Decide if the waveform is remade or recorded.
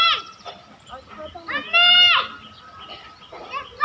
recorded